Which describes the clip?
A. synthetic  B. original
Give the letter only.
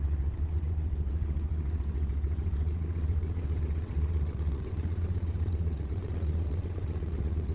A